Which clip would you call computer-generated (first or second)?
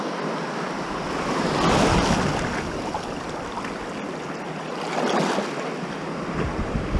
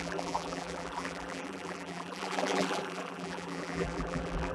second